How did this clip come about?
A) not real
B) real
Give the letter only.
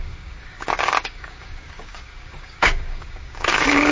A